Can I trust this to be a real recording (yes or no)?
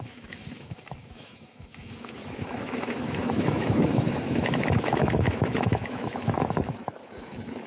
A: no